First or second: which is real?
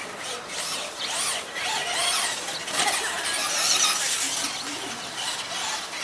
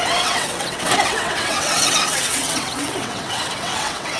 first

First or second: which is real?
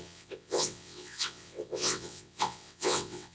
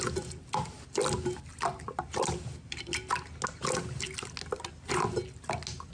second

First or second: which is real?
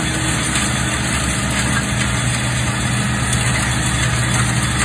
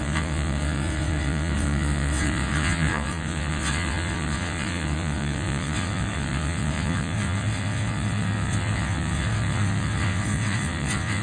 first